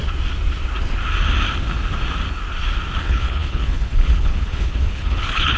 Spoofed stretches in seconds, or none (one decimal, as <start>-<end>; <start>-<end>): 3.0-5.6